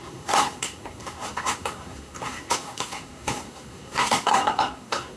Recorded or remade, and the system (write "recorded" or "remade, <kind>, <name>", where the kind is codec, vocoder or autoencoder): remade, codec, SNAC